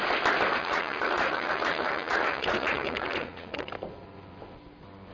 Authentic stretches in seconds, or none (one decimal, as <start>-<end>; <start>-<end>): 0.0-0.6; 3.7-5.1